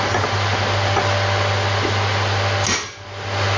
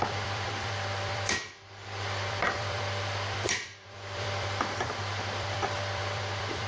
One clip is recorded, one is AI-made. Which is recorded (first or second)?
first